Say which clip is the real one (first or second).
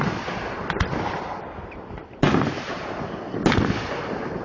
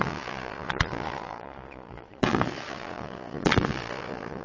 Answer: first